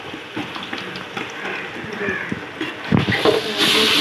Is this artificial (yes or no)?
no